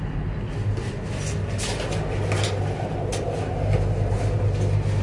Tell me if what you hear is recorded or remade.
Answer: recorded